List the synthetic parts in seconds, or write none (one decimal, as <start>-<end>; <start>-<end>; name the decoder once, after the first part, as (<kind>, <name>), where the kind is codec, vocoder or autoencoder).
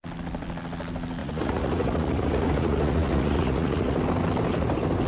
1.2-4.0 (vocoder, Vocos)